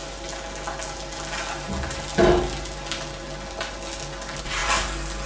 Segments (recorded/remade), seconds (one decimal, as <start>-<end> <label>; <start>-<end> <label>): 0.0-5.3 recorded

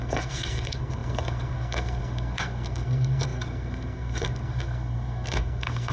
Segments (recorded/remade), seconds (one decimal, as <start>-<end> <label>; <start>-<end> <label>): 0.0-5.9 remade

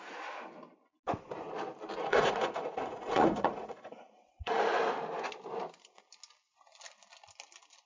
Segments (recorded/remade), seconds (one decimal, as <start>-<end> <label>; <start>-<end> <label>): 0.0-2.0 recorded; 2.0-4.6 remade; 4.6-7.9 recorded

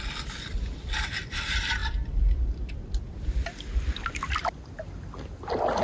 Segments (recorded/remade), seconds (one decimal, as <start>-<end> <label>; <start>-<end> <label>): 0.0-5.8 recorded

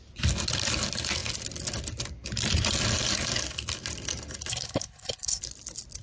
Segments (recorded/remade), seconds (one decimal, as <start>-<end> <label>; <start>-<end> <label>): 0.0-4.5 recorded; 4.5-5.4 remade; 5.4-6.0 recorded

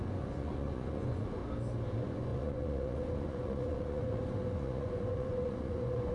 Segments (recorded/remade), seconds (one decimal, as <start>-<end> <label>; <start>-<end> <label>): 0.0-1.4 remade; 1.4-1.9 recorded; 1.9-6.1 remade

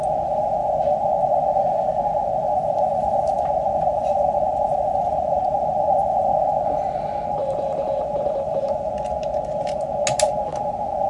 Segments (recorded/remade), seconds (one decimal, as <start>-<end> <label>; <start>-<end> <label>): 0.0-0.6 recorded; 0.6-5.4 remade; 5.4-7.4 recorded; 7.4-8.9 remade; 8.9-11.1 recorded

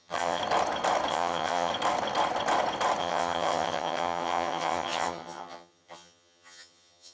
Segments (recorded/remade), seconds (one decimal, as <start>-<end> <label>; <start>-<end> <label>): 0.0-0.4 remade; 0.4-1.1 recorded; 1.1-1.7 remade; 1.7-3.0 recorded; 3.0-7.1 remade